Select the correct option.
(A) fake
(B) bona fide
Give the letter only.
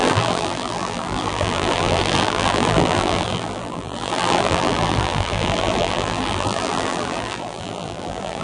A